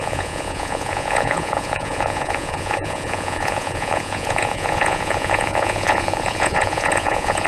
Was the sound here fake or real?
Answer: fake